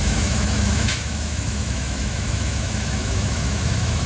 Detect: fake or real fake